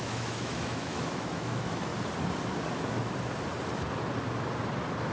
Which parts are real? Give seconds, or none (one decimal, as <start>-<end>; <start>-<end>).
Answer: 1.9-5.1